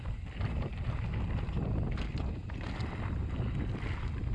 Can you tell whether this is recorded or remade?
recorded